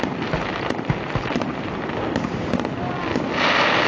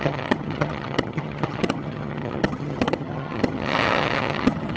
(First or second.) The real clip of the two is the first